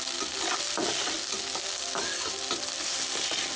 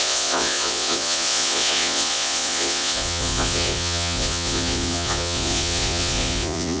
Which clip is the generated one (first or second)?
second